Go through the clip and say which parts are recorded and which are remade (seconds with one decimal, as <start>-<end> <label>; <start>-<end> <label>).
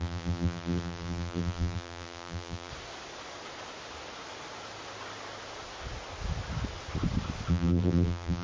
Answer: 0.0-2.7 remade; 2.7-7.5 recorded; 7.5-8.4 remade